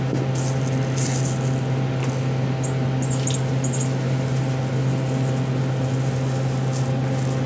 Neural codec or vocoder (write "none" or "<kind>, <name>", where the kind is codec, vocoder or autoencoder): none